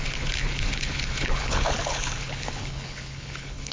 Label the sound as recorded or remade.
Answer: remade